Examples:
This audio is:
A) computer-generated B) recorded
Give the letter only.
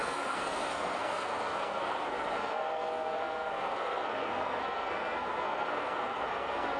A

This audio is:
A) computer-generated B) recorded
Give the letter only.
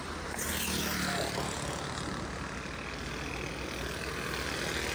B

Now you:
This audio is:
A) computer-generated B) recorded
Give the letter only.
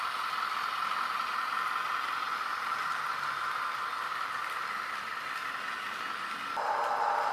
B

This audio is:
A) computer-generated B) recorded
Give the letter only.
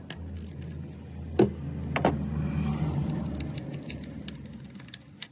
B